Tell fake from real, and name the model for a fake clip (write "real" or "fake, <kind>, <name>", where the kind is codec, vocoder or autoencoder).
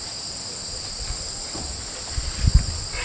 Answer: real